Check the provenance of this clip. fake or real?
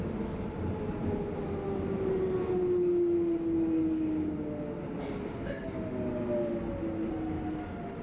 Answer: real